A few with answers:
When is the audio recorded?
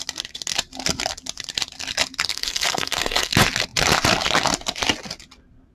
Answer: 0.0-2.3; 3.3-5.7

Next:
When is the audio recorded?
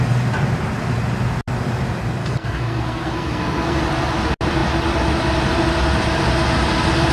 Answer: 0.0-2.2; 3.8-7.1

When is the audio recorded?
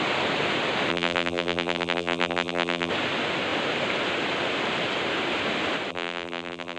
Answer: 0.0-0.9; 2.9-5.9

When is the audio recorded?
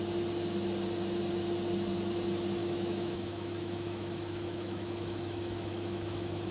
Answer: 0.0-2.6